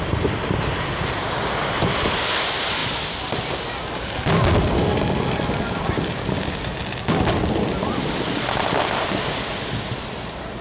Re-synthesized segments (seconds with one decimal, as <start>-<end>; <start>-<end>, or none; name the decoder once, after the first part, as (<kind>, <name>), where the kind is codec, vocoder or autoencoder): none